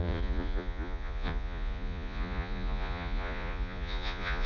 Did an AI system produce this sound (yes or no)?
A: yes